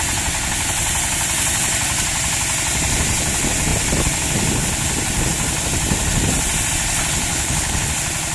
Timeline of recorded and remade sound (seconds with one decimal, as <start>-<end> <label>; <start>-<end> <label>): 0.0-7.3 recorded; 7.3-7.9 remade; 7.9-8.3 recorded